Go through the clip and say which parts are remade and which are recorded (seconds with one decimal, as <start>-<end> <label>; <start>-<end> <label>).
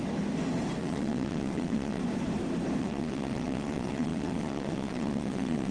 0.0-0.8 recorded; 0.8-2.0 remade; 2.0-2.8 recorded; 2.8-5.7 remade